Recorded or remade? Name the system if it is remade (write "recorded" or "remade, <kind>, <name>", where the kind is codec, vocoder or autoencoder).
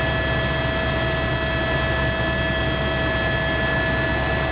recorded